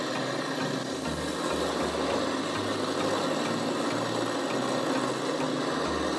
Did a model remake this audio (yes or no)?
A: no